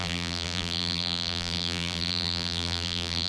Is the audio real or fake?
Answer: fake